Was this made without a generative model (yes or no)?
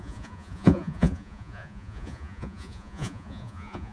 no